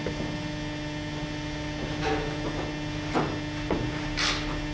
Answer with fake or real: real